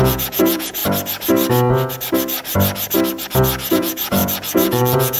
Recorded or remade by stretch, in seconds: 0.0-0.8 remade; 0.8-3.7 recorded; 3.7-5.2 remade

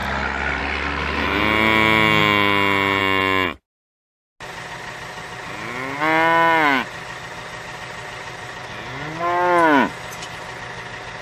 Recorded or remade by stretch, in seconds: 0.0-11.2 recorded

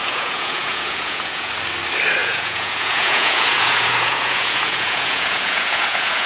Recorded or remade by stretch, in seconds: 0.0-1.5 remade; 1.5-2.2 recorded; 2.2-6.3 remade

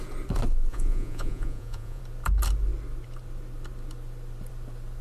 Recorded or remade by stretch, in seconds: 0.0-0.7 recorded; 0.7-2.0 remade; 2.0-5.0 recorded

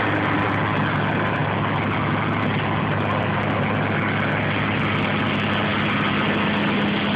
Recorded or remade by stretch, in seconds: 0.0-7.2 recorded

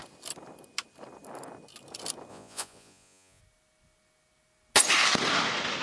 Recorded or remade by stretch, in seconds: 0.0-2.3 recorded; 2.3-3.4 remade; 3.4-5.8 recorded

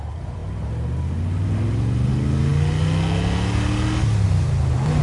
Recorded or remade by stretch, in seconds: 0.0-5.0 recorded

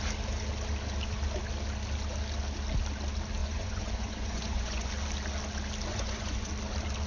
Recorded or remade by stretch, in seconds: 0.0-3.4 recorded; 3.4-4.9 remade; 4.9-5.9 recorded; 5.9-6.5 remade; 6.5-7.1 recorded